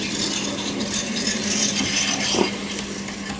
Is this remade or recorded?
recorded